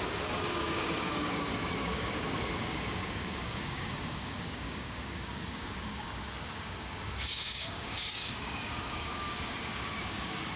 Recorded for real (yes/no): no